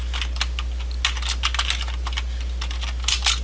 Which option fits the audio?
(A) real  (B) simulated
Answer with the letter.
A